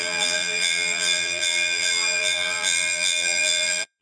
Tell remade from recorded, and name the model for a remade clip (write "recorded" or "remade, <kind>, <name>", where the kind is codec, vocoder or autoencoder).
remade, vocoder, BigVGAN v2